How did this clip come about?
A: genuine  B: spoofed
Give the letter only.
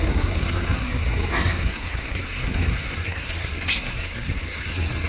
B